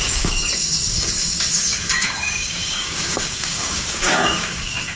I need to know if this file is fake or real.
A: fake